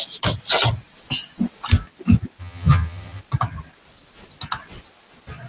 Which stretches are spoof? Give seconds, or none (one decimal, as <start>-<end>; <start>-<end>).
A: 2.4-3.2